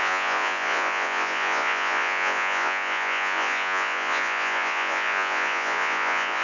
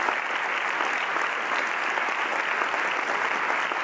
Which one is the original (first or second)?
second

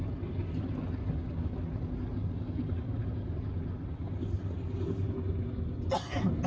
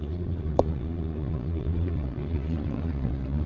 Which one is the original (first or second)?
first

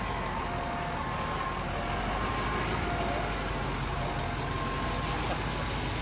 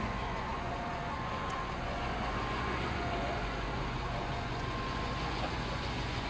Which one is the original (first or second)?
first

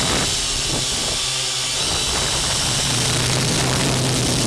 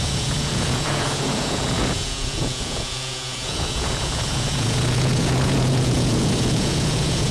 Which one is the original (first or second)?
first